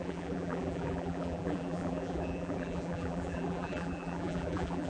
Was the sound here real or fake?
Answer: fake